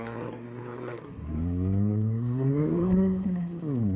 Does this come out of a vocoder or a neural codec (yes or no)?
yes